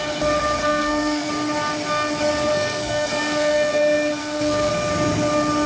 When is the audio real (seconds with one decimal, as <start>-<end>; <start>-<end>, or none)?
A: 0.0-0.6; 1.3-2.5; 3.8-4.2; 4.7-5.7